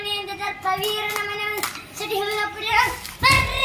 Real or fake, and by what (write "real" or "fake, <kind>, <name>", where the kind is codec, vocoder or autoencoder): real